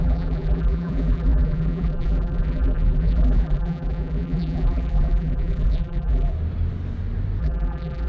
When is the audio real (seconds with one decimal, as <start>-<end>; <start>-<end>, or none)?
6.3-7.4

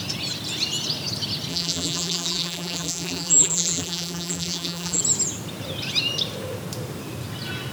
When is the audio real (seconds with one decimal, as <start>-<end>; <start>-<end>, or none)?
0.0-1.5; 5.0-7.7

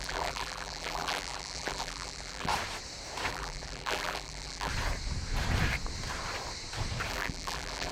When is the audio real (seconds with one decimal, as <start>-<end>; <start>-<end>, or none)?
2.5-3.3; 4.7-7.1

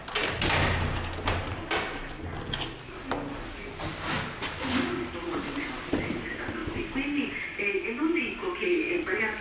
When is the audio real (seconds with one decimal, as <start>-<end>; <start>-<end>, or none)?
0.0-1.4; 2.1-9.4

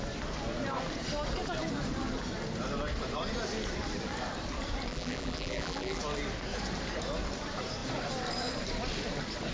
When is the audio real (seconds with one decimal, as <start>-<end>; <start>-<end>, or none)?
0.0-4.9; 6.0-9.5

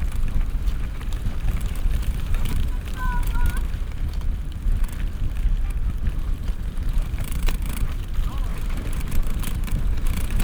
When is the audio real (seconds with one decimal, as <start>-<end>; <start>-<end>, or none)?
4.9-5.9

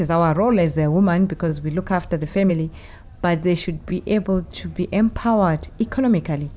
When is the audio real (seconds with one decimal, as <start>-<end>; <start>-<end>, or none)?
0.0-3.9; 4.5-6.6

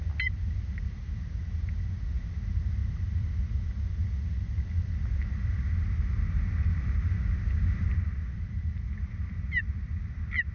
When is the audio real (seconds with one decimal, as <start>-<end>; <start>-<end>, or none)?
0.0-2.8; 3.3-7.9; 8.9-10.5